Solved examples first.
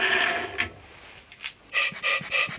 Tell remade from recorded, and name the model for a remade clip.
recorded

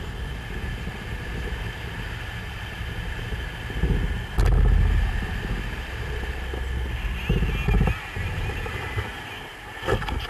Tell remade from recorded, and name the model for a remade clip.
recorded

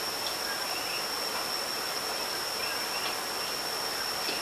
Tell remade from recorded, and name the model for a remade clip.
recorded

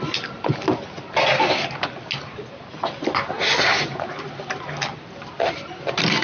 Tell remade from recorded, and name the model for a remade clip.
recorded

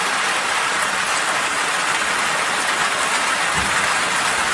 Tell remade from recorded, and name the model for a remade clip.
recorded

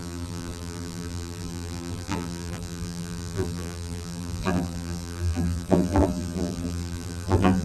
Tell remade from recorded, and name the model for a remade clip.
remade, vocoder, BigVGAN v2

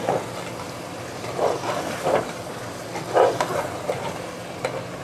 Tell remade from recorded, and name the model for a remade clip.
recorded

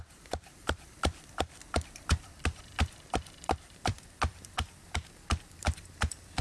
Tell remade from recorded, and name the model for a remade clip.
remade, vocoder, BigVGAN v2